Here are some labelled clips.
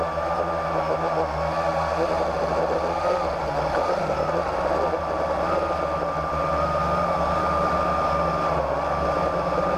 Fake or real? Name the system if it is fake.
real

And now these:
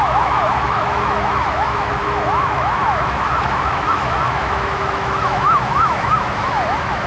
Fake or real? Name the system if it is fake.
fake, autoencoder, DAC-VAE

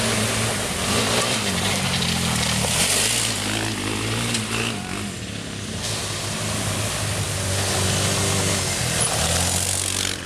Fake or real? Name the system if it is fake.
real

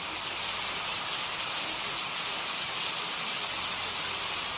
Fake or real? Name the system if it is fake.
real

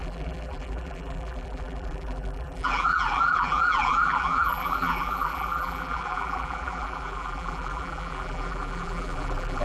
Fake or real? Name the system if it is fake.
fake, vocoder, BigVGAN v2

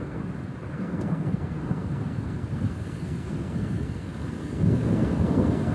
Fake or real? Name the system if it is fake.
fake, codec, SNAC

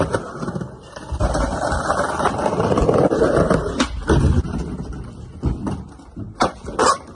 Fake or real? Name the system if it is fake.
real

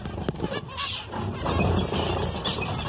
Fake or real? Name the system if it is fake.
real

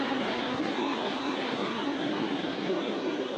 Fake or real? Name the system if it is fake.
fake, codec, SNAC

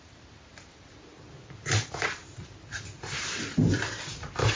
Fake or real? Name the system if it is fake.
fake, vocoder, BigVGAN v2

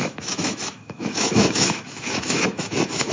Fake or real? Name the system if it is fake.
fake, autoencoder, DAC-VAE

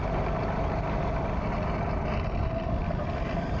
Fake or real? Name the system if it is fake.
real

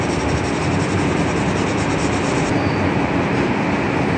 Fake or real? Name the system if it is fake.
real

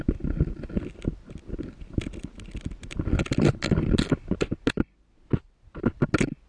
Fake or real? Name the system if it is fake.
real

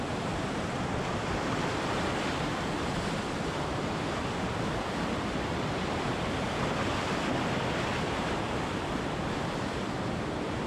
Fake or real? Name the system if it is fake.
fake, vocoder, BigVGAN v2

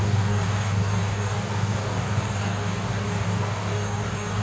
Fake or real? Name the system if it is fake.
fake, codec, DAC